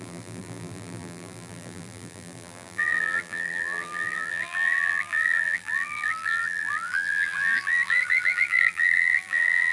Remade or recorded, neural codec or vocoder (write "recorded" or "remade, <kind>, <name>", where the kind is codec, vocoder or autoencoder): remade, vocoder, BigVGAN v2